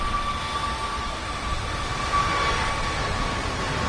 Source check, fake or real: real